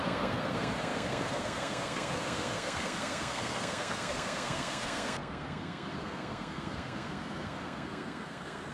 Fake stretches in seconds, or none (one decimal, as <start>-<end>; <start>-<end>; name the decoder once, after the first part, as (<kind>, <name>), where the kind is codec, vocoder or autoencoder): 0.0-8.7 (codec, SNAC)

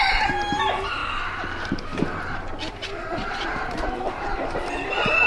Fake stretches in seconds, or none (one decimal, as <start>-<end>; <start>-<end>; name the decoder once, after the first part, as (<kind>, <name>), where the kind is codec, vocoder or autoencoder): 0.0-1.0 (vocoder, BigVGAN v2); 2.7-5.3

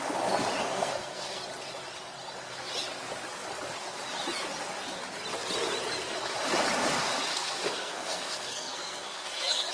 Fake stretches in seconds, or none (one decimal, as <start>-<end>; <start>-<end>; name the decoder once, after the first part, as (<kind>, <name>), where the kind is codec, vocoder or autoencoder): 0.6-1.4 (codec, SNAC); 7.3-9.7

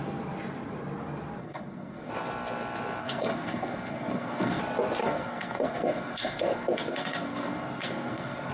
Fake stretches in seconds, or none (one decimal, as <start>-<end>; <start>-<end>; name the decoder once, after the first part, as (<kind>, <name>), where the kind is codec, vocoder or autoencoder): 1.4-2.1 (codec, SNAC); 3.0-4.6; 5.0-8.5

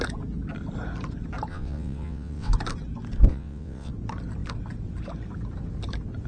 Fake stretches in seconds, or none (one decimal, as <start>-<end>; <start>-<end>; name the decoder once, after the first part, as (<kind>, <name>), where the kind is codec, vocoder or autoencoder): 1.5-2.5 (vocoder, WaveNeXt); 3.3-3.9

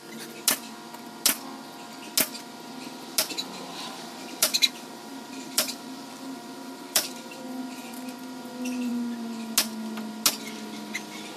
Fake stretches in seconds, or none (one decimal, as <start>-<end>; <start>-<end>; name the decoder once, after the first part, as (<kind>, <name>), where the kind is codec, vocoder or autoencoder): 3.7-7.4 (vocoder, BigVGAN v2)

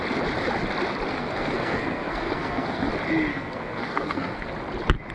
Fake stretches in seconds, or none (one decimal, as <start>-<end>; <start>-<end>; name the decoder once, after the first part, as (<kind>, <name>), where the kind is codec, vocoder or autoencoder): 1.1-2.9 (codec, SNAC); 3.3-4.5